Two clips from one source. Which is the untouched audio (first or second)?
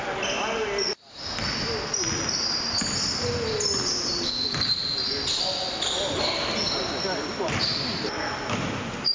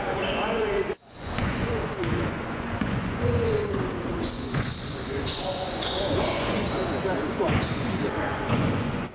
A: first